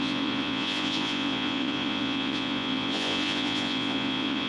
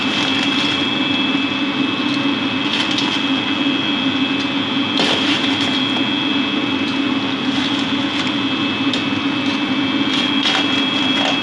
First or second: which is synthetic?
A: first